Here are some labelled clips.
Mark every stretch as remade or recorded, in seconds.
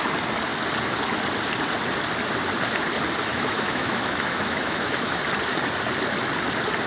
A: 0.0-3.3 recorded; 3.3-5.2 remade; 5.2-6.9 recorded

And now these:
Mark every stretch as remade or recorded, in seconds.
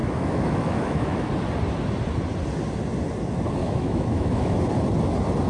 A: 0.0-1.3 remade; 1.3-3.6 recorded; 3.6-4.6 remade; 4.6-5.5 recorded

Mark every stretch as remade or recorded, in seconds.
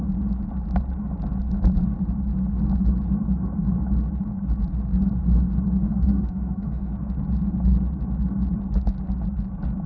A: 0.0-5.8 recorded; 5.8-6.9 remade; 6.9-9.9 recorded